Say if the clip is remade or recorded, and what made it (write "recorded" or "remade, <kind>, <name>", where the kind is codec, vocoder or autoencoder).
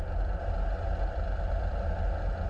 recorded